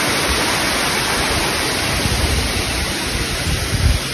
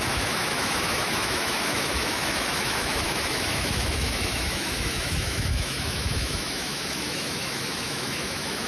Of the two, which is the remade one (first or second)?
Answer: second